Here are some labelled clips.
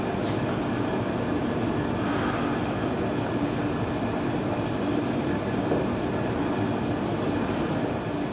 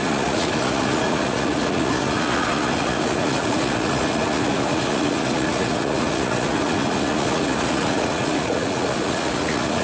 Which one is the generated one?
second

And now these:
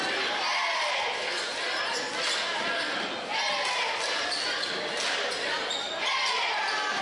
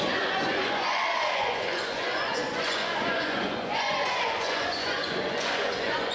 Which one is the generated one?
second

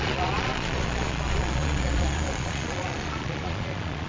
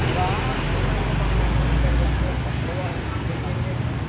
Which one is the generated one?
first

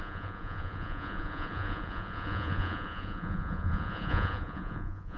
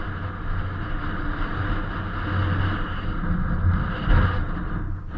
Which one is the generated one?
first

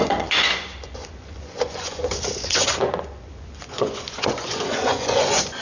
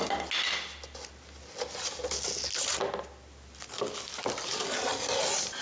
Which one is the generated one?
first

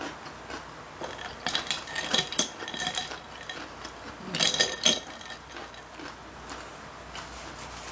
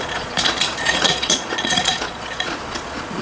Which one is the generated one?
second